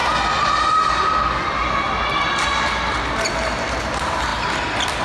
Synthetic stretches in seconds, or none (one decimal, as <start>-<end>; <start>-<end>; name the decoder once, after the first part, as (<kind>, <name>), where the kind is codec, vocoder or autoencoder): none